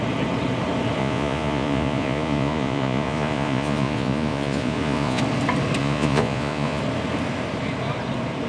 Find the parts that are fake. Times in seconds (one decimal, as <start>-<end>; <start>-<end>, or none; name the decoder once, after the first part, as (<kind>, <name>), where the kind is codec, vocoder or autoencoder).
1.0-5.2 (vocoder, Vocos); 5.8-6.8